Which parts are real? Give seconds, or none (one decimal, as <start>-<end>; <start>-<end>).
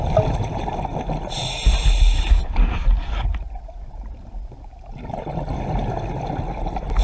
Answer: 0.0-2.4; 4.3-7.0